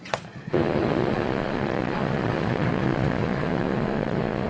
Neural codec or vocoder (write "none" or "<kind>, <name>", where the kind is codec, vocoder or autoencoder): vocoder, Vocos